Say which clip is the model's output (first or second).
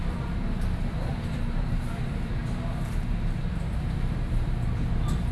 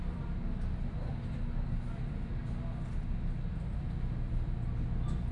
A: first